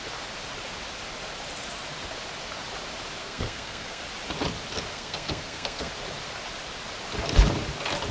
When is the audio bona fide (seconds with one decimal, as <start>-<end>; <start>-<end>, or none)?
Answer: 0.0-3.2; 4.0-4.9; 5.9-8.1